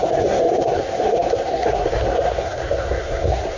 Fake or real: fake